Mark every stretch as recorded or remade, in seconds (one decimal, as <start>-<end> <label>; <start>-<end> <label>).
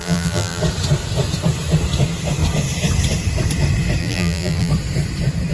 0.0-0.6 remade; 0.6-4.0 recorded; 4.0-4.7 remade; 4.7-5.5 recorded